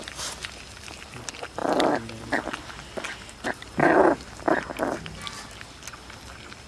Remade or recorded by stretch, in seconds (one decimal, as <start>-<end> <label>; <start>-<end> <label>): 0.0-6.7 recorded